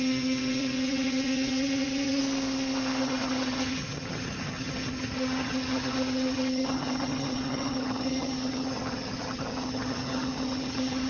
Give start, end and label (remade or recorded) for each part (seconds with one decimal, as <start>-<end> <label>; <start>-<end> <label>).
0.0-2.2 remade; 2.2-3.0 recorded; 3.0-11.1 remade